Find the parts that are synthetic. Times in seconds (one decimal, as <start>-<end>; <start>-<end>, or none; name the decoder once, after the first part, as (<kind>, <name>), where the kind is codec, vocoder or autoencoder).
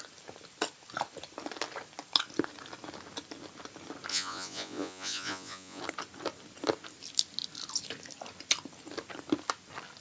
4.1-5.8 (vocoder, Vocos)